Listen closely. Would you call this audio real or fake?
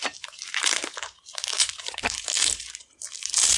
fake